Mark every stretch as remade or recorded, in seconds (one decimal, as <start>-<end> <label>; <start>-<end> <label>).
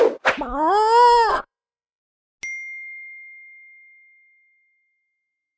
0.0-1.3 recorded; 1.3-2.0 remade; 2.0-5.6 recorded